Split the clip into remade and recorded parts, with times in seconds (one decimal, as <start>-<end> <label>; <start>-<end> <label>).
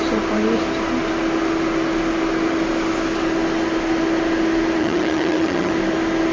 0.0-4.8 recorded; 4.8-5.7 remade; 5.7-6.3 recorded